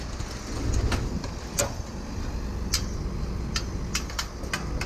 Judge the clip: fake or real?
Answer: real